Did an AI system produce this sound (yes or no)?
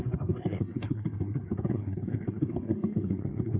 yes